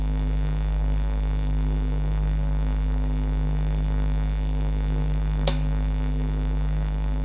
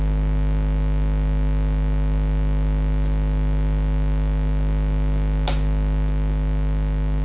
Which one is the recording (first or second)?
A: second